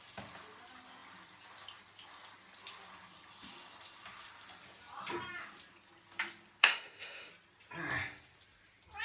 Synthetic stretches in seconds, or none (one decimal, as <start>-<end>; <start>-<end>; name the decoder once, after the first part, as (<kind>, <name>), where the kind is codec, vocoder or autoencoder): 6.6-7.3 (autoencoder, DAC-VAE)

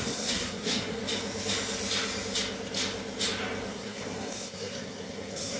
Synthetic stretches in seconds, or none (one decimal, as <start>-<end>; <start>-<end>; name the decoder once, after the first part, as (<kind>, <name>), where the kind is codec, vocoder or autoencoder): 0.0-1.0 (codec, SNAC); 3.7-5.6

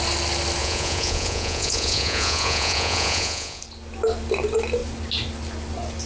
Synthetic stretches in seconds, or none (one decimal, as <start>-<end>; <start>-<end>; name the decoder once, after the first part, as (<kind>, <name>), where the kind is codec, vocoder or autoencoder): 0.6-3.6 (vocoder, Vocos)

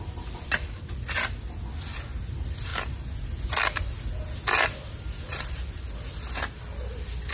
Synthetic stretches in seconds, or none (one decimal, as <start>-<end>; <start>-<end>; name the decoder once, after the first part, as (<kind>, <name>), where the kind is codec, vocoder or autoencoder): none

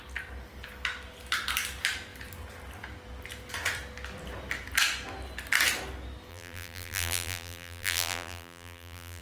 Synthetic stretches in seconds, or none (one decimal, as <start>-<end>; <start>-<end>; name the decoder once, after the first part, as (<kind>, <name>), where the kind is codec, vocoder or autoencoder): 6.3-9.2 (vocoder, BigVGAN v2)